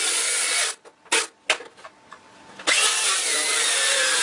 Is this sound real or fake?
real